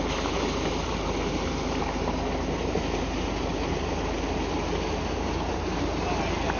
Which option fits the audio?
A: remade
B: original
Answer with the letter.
B